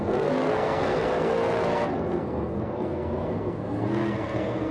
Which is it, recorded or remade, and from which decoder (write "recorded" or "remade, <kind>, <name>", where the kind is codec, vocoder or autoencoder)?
remade, codec, SNAC